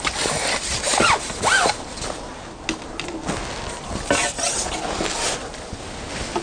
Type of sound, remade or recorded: recorded